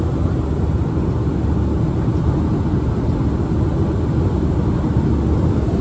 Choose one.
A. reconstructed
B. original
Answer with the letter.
B